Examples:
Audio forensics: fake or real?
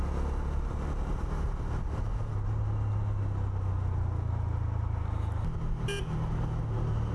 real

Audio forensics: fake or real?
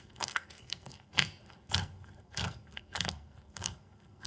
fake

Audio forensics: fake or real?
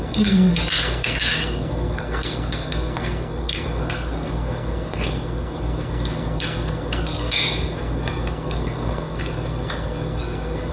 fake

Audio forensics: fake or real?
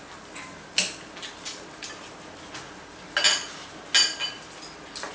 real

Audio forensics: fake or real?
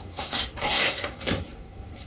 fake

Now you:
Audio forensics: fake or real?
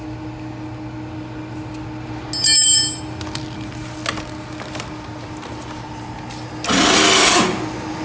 real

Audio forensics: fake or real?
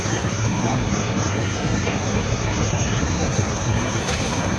fake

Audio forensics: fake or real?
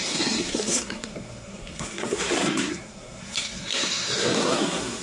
fake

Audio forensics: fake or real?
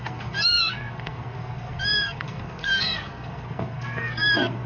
fake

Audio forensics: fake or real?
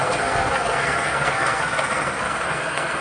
fake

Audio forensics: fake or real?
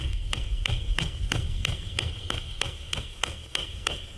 fake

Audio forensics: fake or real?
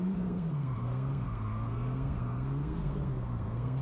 fake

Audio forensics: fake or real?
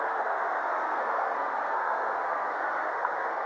fake